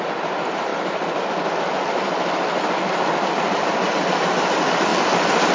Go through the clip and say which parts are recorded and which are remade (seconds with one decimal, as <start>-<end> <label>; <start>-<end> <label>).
0.0-5.5 recorded